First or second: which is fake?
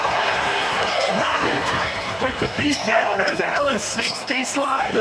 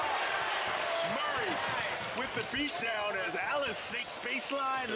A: first